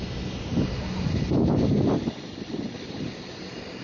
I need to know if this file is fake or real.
real